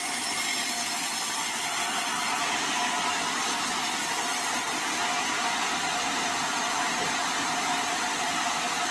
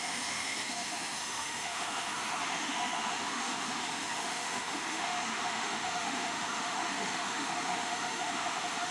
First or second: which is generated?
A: second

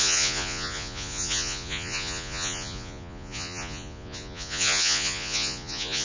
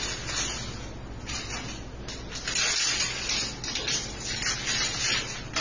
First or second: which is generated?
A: first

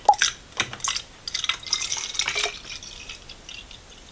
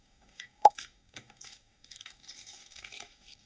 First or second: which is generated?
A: second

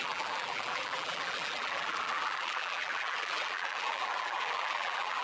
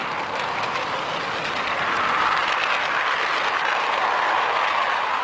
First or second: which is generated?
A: first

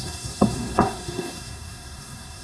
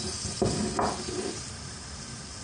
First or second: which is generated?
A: first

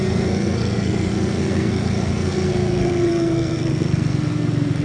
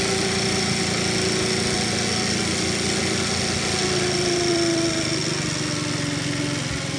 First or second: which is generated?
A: first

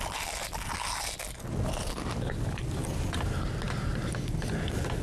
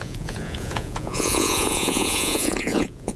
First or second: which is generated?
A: second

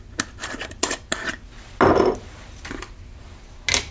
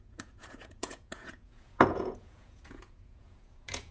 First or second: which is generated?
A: second